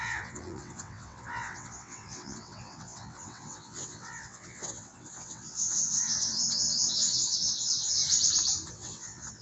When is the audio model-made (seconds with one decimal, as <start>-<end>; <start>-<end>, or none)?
0.0-8.0; 8.7-9.4